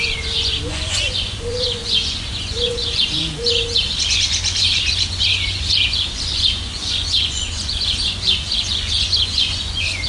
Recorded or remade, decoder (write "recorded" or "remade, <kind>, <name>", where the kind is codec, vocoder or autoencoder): remade, vocoder, Vocos